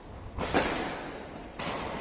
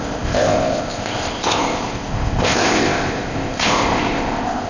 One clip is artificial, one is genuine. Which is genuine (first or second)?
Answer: first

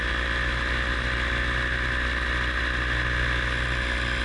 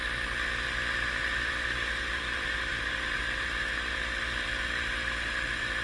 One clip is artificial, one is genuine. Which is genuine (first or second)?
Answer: first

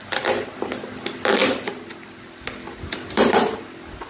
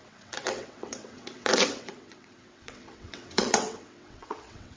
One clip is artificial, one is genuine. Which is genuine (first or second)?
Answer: first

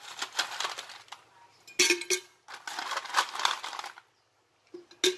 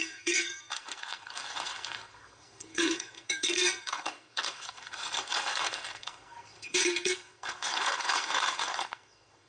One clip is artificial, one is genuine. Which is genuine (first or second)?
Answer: first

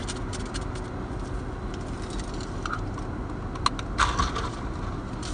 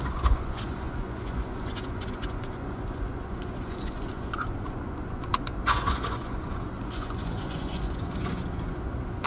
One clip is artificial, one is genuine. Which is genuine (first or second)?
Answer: first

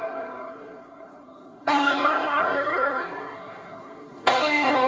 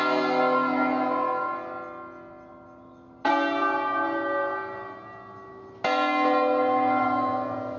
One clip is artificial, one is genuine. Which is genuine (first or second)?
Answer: second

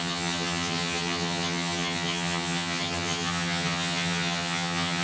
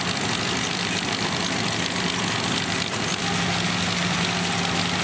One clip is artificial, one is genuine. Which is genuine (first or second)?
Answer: second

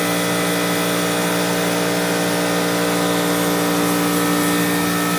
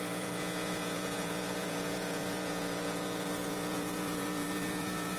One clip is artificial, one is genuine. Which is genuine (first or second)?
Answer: first